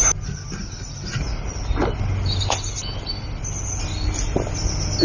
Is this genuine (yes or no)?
yes